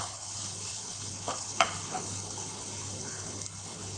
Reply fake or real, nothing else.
fake